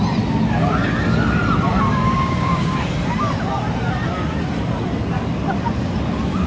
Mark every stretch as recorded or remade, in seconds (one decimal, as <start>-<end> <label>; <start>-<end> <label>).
0.0-1.9 recorded; 1.9-2.8 remade; 2.8-6.5 recorded